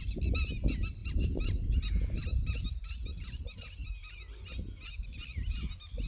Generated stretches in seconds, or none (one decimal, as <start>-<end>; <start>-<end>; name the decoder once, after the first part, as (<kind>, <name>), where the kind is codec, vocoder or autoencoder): 1.0-4.4 (vocoder, BigVGAN v2)